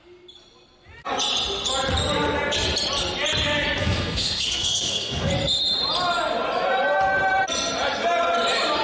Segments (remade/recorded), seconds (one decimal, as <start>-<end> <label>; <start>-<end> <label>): 0.0-3.8 recorded; 3.8-5.3 remade; 5.3-8.8 recorded